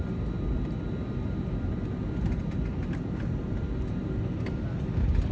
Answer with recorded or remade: recorded